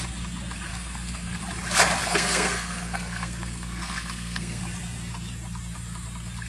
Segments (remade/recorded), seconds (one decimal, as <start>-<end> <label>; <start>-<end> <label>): 0.0-0.7 recorded; 0.7-1.4 remade; 1.4-2.0 recorded; 2.0-4.6 remade; 4.6-6.5 recorded